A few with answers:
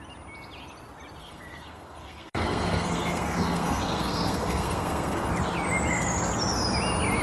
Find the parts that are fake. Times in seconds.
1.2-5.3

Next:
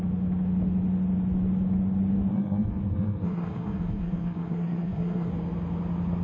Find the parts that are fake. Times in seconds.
2.3-5.3

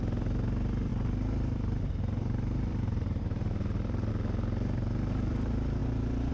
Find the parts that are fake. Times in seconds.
0.9-4.1

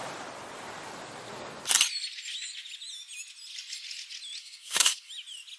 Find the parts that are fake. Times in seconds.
4.4-5.1

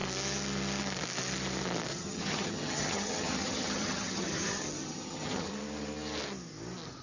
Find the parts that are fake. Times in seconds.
1.9-5.5

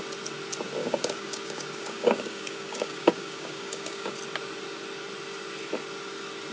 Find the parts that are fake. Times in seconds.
0.8-4.1

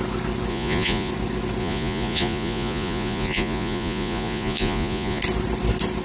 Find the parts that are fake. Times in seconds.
0.5-1.1; 1.6-5.2